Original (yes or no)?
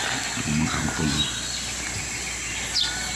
yes